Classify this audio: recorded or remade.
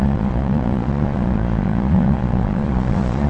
remade